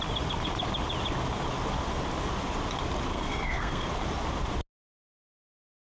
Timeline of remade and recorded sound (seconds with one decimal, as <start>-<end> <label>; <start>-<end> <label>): 0.0-3.1 recorded; 3.1-3.9 remade; 3.9-5.9 recorded